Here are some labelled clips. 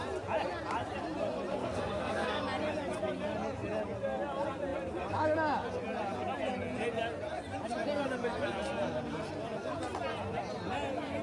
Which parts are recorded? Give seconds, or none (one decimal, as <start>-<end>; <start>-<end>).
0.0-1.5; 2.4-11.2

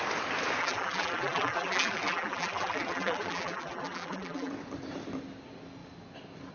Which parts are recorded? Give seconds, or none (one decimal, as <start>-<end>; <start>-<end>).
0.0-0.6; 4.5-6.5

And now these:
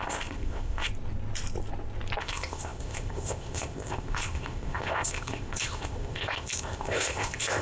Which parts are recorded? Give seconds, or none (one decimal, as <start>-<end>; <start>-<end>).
0.9-2.2